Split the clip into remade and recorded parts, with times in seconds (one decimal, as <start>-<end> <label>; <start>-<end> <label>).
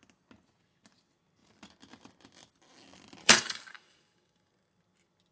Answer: 0.0-3.2 recorded; 3.2-4.5 remade; 4.5-5.3 recorded